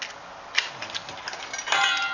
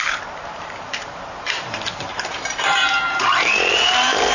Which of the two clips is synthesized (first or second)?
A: second